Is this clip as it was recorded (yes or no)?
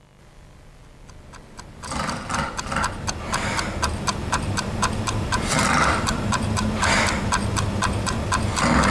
yes